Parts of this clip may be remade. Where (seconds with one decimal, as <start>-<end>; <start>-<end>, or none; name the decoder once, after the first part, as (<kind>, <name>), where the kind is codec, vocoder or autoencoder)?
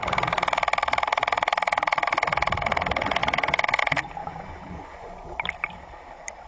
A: 4.2-5.4 (vocoder, Vocos)